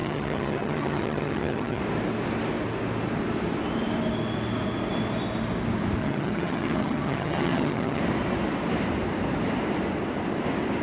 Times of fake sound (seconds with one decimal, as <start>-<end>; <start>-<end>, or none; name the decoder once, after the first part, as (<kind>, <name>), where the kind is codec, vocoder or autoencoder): 0.0-1.8 (vocoder, HiFi-GAN); 6.0-8.0